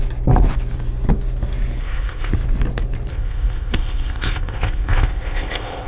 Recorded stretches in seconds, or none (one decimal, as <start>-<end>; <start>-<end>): 0.0-1.8; 2.3-3.1